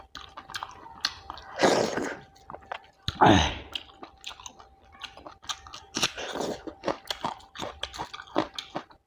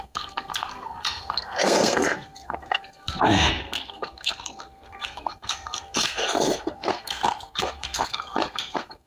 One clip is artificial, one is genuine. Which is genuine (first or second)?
first